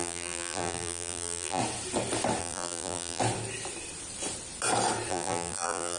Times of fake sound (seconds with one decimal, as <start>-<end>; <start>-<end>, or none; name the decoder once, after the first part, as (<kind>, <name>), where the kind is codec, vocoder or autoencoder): 0.0-1.6 (vocoder, BigVGAN v2); 2.4-3.2; 5.1-6.0